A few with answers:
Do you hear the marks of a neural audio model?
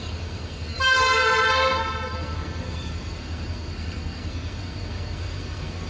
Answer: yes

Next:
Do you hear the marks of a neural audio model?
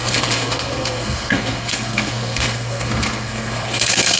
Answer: yes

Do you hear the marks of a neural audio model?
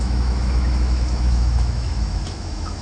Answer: yes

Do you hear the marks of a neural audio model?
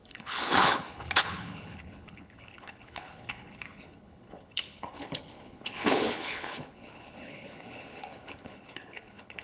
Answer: yes